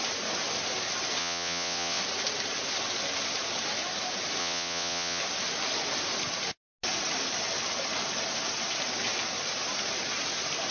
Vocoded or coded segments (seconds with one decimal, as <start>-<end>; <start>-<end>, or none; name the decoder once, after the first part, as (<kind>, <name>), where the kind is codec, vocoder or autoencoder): 1.2-2.0 (vocoder, WaveNeXt); 4.4-5.2